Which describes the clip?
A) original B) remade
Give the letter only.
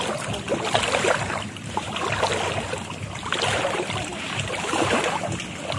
A